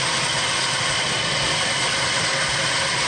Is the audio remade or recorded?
recorded